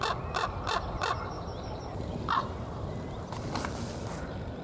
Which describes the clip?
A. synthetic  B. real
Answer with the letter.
B